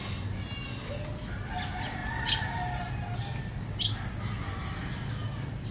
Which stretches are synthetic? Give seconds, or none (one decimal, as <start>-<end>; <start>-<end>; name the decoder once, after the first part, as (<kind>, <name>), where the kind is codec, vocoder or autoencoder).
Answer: 2.0-2.9 (vocoder, BigVGAN v2)